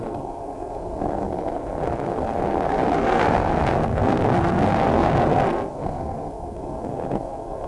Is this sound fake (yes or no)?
yes